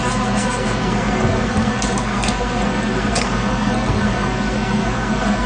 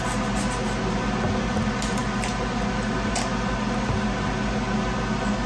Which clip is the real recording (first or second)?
second